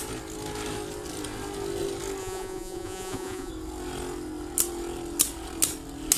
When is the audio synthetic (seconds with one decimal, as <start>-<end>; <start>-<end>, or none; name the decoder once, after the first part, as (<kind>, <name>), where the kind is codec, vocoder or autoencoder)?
2.2-3.5 (vocoder, Vocos)